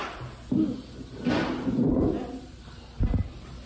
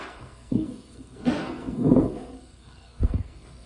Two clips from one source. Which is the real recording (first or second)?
first